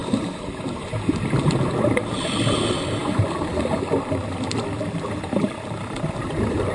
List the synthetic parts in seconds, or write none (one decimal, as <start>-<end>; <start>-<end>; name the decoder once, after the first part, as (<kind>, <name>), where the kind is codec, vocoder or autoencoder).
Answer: 0.0-1.7 (vocoder, BigVGAN v2)